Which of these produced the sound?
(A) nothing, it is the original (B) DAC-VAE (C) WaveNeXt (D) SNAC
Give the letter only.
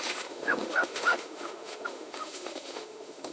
B